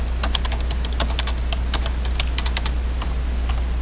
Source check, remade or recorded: recorded